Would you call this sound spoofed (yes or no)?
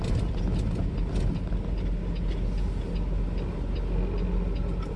no